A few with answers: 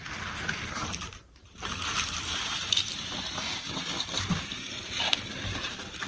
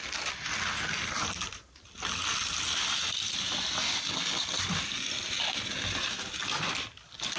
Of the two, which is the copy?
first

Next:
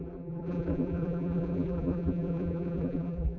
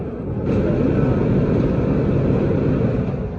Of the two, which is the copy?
first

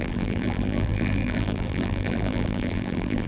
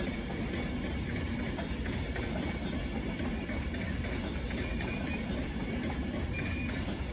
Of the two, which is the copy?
first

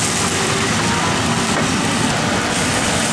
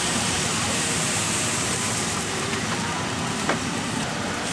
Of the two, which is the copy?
second